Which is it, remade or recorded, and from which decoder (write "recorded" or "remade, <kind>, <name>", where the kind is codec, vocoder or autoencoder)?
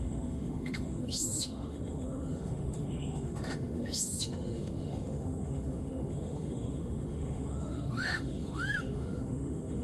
remade, autoencoder, DAC-VAE